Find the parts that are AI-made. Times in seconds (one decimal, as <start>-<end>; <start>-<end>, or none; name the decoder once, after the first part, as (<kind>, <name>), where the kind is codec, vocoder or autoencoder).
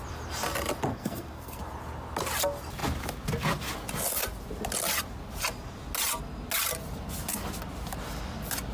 0.9-1.6 (codec, SNAC)